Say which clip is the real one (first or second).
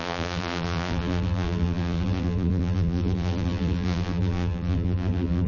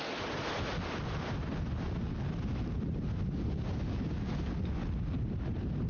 second